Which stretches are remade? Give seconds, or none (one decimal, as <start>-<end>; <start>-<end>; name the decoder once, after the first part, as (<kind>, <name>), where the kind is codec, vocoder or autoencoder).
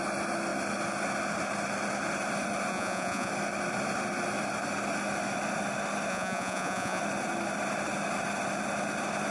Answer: 2.7-3.3 (vocoder, Vocos); 6.1-7.0